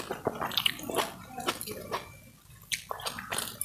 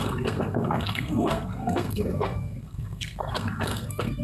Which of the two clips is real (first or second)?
first